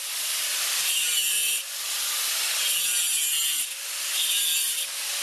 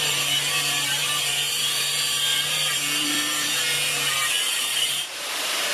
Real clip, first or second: first